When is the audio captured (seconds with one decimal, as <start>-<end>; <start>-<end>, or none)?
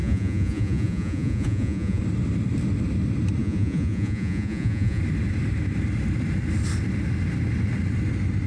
2.0-3.4; 5.0-8.5